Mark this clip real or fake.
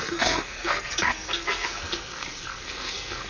fake